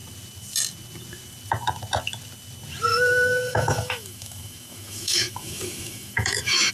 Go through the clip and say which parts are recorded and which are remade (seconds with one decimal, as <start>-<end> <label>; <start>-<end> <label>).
0.0-2.9 recorded; 2.9-6.7 remade